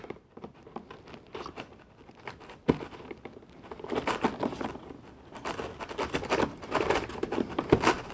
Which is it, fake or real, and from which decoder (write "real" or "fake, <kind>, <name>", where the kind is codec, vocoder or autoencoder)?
real